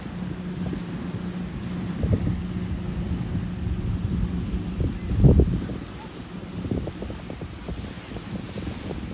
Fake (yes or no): no